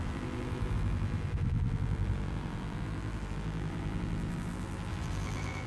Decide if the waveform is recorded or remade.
remade